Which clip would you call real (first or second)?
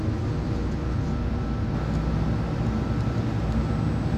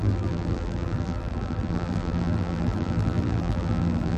first